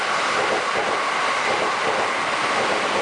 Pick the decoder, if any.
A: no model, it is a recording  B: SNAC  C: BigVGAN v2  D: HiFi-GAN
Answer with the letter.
A